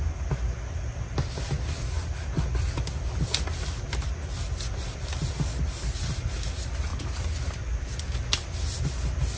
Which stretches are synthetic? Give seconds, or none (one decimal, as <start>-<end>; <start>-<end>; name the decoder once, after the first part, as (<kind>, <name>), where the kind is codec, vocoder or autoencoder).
none